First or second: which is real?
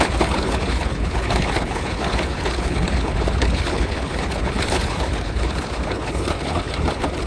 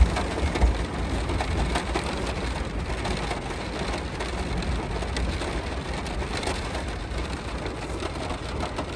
second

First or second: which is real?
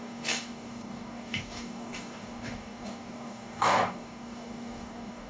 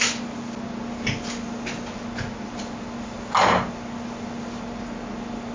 second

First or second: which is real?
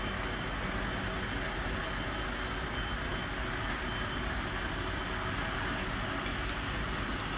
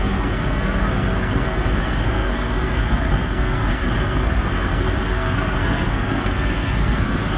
first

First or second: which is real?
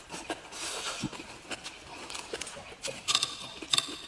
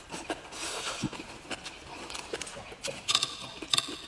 second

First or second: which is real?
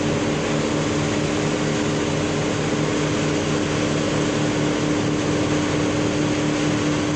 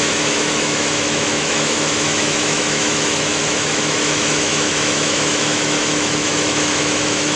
first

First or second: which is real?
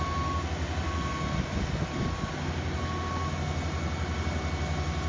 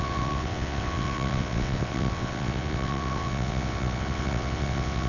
first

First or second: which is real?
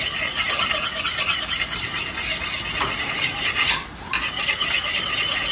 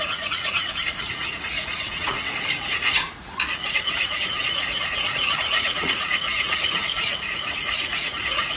first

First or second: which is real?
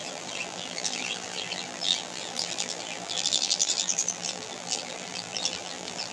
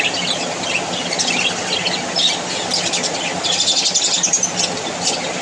second